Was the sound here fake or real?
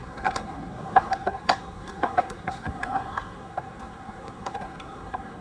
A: fake